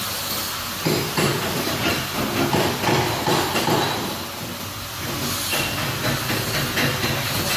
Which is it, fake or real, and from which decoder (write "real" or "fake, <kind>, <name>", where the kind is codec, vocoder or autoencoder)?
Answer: real